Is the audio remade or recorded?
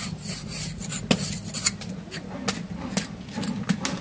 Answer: recorded